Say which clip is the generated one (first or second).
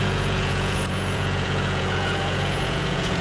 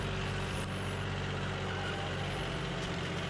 first